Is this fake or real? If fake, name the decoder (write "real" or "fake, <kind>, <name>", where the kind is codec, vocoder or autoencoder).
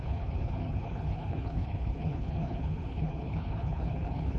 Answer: fake, codec, HILCodec